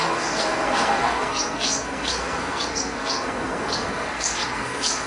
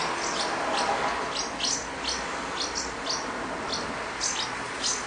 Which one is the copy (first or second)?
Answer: first